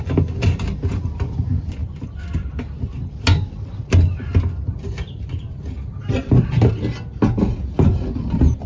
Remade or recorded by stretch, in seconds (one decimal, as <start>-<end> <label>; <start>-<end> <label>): 0.0-8.7 recorded